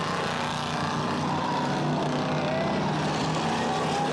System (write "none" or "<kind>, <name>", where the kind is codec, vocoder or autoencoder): none